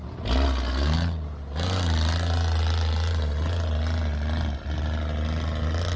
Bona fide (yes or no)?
yes